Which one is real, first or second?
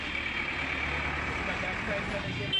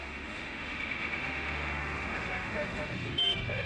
first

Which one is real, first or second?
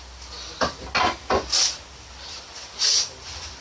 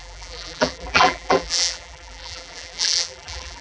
first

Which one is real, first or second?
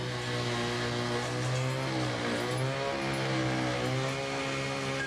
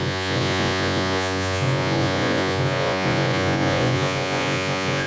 first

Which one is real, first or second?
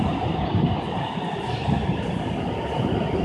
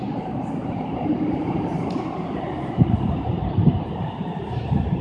first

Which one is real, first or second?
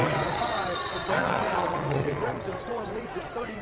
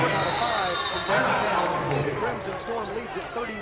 second